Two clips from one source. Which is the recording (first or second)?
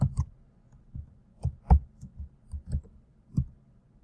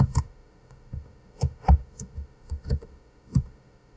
first